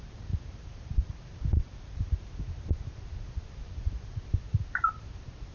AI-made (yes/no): yes